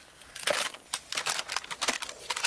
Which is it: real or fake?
real